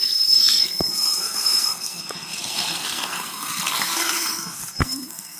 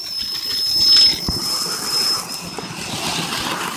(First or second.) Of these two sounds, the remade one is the first